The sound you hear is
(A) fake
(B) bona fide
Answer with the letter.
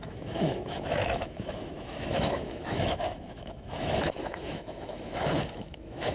A